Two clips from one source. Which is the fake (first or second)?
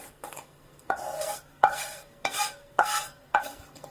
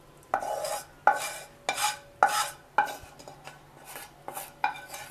first